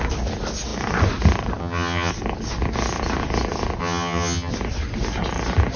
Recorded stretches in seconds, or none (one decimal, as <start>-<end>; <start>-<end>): 0.0-1.6; 2.1-3.8; 4.5-5.8